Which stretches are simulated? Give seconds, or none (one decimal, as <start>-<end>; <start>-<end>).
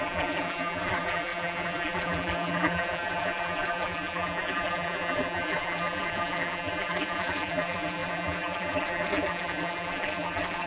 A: 0.0-10.7